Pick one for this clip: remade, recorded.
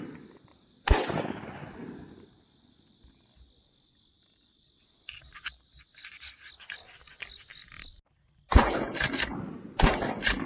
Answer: recorded